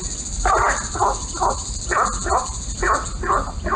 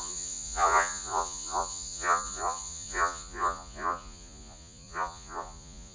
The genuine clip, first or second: first